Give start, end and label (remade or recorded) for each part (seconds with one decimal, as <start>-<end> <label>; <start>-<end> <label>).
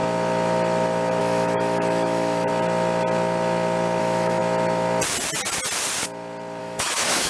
0.0-1.2 recorded; 1.2-2.5 remade; 2.5-4.0 recorded; 4.0-4.4 remade; 4.4-6.6 recorded; 6.6-7.3 remade